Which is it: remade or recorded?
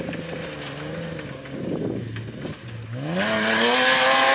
recorded